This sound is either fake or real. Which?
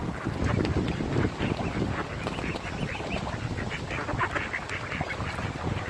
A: real